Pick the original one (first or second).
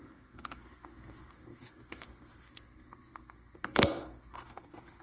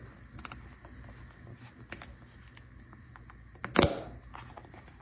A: second